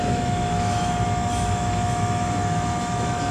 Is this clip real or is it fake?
fake